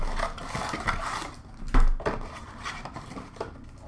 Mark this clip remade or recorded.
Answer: recorded